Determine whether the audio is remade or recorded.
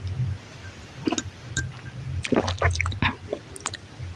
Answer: recorded